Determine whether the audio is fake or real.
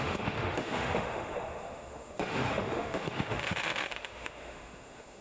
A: fake